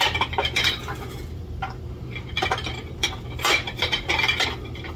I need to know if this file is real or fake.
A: fake